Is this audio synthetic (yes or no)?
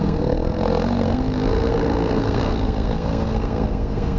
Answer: yes